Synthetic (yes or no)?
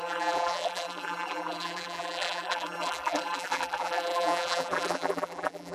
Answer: yes